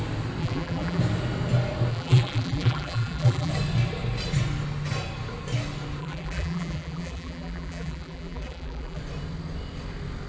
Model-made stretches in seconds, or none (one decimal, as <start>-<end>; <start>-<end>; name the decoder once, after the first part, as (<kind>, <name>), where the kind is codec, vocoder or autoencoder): 0.4-1.0 (vocoder, BigVGAN v2); 1.9-3.5; 6.0-9.0